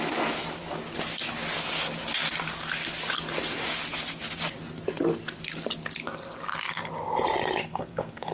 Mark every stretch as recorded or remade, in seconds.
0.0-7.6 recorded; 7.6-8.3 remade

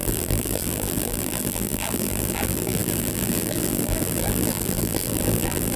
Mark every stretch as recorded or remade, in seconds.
0.0-5.8 remade

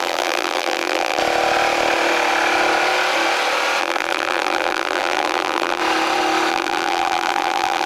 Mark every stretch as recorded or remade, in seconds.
0.0-1.2 remade; 1.2-3.8 recorded; 3.8-5.8 remade; 5.8-6.5 recorded; 6.5-7.9 remade

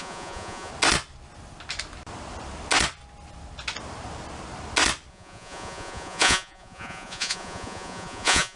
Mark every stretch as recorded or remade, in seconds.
0.0-0.7 remade; 0.7-5.1 recorded; 5.1-8.6 remade

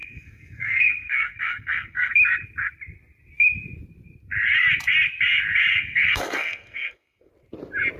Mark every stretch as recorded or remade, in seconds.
0.0-2.1 remade; 2.1-5.7 recorded; 5.7-7.3 remade; 7.3-8.0 recorded

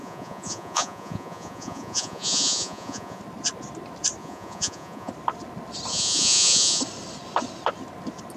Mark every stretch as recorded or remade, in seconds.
0.0-3.2 remade; 3.2-4.2 recorded; 4.2-5.1 remade; 5.1-5.9 recorded; 5.9-6.8 remade; 6.8-8.4 recorded